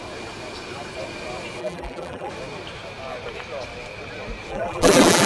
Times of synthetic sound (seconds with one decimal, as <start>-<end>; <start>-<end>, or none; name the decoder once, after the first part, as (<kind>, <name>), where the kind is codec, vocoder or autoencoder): 1.6-2.3 (vocoder, BigVGAN v2); 4.5-5.3